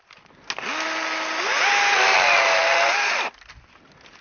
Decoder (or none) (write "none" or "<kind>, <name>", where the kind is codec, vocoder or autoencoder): none